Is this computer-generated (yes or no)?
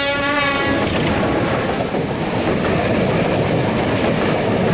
no